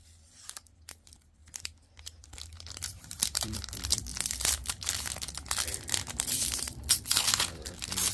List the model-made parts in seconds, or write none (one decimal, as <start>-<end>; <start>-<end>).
0.0-1.4; 2.9-4.1; 6.1-8.1